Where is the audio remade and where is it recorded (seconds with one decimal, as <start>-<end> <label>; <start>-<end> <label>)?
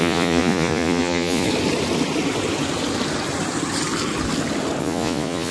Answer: 0.0-1.5 remade; 1.5-4.8 recorded; 4.8-5.5 remade